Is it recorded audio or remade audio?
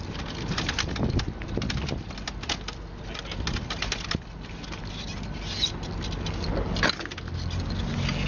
recorded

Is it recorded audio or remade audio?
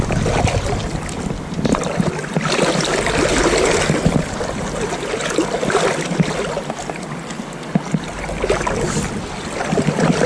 recorded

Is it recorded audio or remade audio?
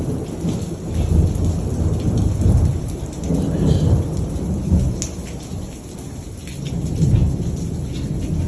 recorded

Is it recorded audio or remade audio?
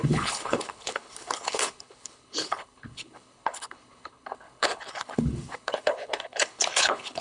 remade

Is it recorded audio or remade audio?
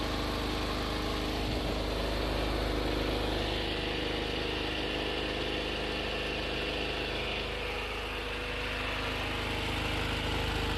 recorded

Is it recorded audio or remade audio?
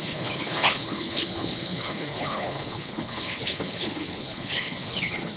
remade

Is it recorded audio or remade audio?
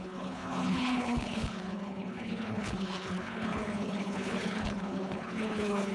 remade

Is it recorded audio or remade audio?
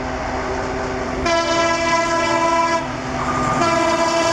recorded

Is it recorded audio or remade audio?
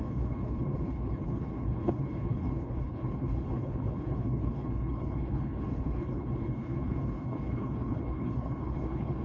remade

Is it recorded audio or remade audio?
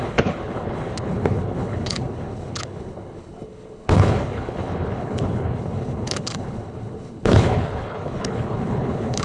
remade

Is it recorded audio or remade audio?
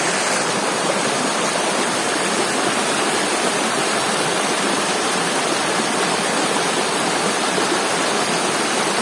recorded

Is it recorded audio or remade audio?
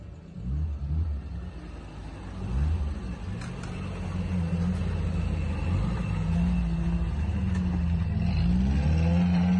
recorded